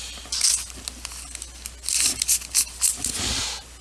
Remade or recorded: recorded